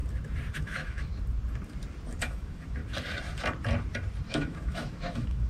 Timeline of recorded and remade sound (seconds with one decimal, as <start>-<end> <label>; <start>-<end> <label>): 0.0-0.5 recorded; 0.5-1.1 remade; 1.1-2.2 recorded; 2.2-2.8 remade; 2.8-4.3 recorded; 4.3-5.5 remade